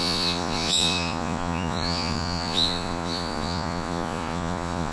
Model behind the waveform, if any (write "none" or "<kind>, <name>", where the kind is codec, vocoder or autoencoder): vocoder, Vocos